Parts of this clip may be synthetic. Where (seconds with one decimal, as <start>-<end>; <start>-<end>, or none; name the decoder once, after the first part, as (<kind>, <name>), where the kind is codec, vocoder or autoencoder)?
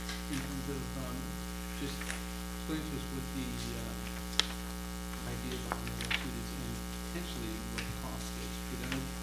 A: none